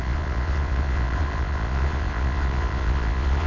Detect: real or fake fake